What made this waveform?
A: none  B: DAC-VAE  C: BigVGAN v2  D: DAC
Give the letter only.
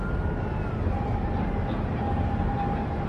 A